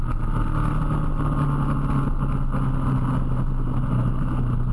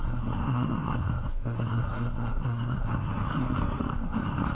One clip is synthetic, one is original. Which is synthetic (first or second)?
second